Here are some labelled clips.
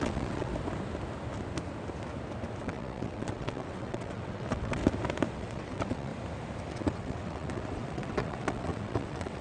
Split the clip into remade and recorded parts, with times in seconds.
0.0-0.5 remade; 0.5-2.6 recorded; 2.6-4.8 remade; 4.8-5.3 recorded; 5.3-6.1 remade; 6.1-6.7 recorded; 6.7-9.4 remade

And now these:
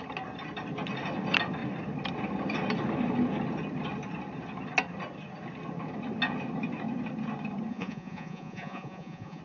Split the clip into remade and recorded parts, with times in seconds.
0.0-7.7 recorded; 7.7-9.4 remade

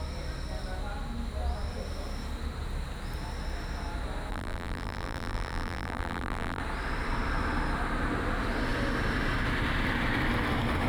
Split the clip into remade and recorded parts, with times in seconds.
0.0-4.3 recorded; 4.3-6.6 remade; 6.6-10.9 recorded

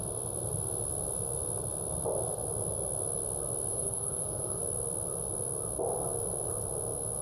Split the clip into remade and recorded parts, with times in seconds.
0.0-3.7 recorded; 3.7-4.6 remade; 4.6-7.2 recorded

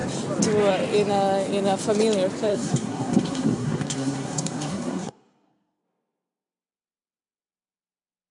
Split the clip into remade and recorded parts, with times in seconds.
0.0-2.5 recorded; 2.5-5.8 remade; 5.8-8.3 recorded

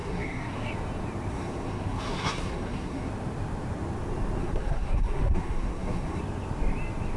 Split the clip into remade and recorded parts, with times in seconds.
0.0-0.7 remade; 0.7-1.3 recorded; 1.3-3.1 remade; 3.1-4.4 recorded; 4.4-6.2 remade; 6.2-7.2 recorded